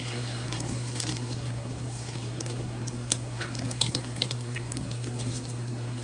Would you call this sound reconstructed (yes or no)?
yes